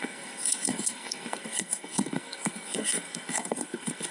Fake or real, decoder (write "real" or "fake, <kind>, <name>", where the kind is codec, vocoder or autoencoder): fake, codec, SNAC